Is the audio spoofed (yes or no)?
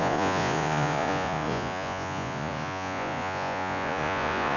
yes